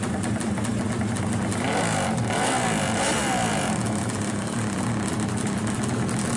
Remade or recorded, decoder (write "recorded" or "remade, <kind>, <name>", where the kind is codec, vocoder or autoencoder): recorded